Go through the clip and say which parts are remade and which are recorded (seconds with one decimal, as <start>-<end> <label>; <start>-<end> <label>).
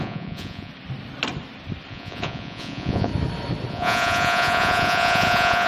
0.0-0.7 remade; 0.7-1.9 recorded; 1.9-3.1 remade; 3.1-3.7 recorded; 3.7-5.7 remade